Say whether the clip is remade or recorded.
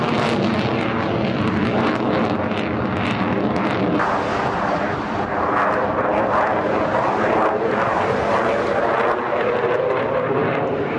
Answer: recorded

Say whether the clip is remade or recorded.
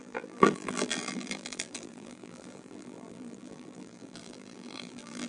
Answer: remade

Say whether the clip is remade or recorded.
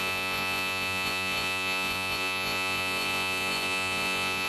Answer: remade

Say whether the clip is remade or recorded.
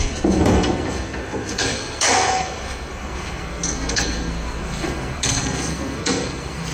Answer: remade